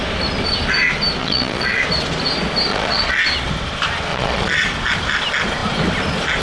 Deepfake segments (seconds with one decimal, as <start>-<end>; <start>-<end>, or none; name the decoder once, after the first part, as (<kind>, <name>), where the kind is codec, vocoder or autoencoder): 1.2-1.8 (vocoder, Vocos); 2.7-3.2; 4.1-4.6